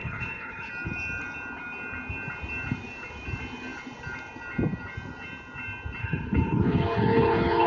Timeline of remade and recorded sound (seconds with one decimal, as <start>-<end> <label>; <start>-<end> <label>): 0.0-0.7 remade; 0.7-6.0 recorded; 6.0-7.7 remade